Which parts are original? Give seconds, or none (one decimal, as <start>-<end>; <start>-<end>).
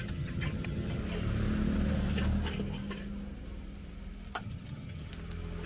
1.0-4.4; 5.1-5.7